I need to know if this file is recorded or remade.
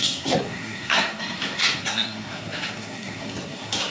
remade